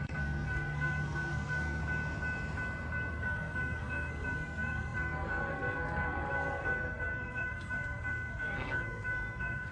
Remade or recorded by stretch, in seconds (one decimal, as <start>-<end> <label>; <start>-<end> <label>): 0.0-1.8 remade; 1.8-3.1 recorded; 3.1-9.7 remade